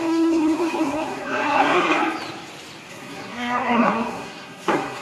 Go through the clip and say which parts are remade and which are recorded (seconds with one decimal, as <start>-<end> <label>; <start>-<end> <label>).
0.0-2.0 remade; 2.0-2.9 recorded; 2.9-5.0 remade